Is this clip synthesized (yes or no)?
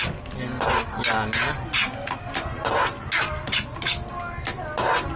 no